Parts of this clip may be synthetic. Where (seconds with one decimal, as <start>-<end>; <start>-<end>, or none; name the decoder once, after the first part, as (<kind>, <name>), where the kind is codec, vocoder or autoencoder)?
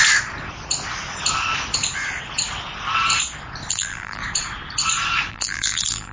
3.7-4.2 (vocoder, BigVGAN v2); 5.3-6.1